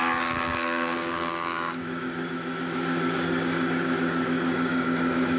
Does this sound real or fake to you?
fake